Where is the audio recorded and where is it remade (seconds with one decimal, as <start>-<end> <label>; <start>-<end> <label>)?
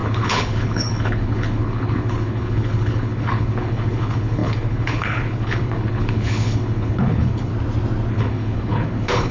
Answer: 0.0-7.5 remade; 7.5-8.1 recorded; 8.1-9.3 remade